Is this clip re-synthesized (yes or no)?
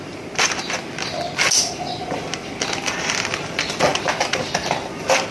no